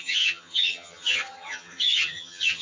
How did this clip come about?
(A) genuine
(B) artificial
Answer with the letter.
B